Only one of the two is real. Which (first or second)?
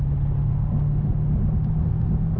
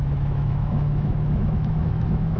first